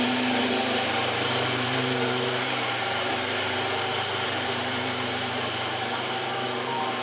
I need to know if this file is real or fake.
fake